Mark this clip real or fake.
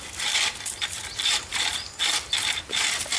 fake